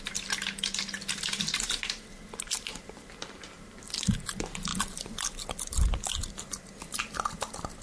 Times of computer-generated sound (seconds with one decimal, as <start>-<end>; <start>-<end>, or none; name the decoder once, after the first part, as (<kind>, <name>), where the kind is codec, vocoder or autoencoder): none